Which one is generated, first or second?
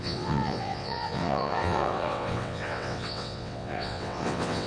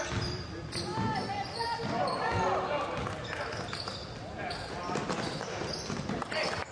first